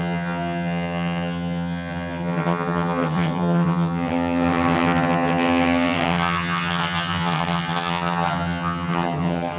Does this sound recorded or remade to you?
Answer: remade